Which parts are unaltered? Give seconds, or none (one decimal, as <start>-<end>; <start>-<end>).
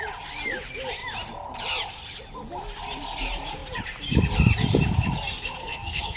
0.0-5.6